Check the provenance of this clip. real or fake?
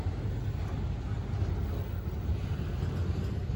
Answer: real